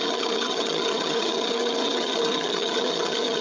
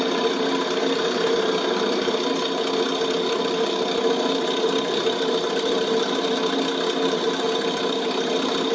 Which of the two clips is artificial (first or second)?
first